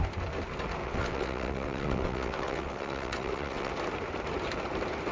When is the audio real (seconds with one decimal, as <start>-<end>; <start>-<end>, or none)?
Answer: 0.0-0.8; 3.7-5.1